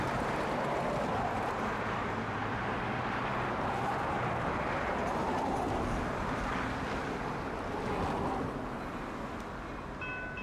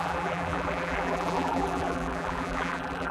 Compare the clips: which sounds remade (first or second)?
second